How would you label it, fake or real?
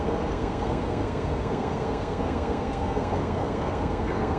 fake